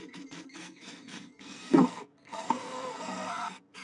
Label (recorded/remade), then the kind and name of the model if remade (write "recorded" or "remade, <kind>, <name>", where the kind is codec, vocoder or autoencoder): remade, codec, SNAC